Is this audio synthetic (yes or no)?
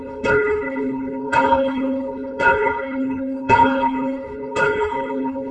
yes